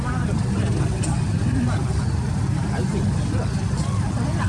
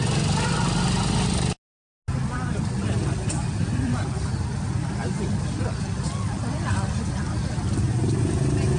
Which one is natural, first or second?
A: second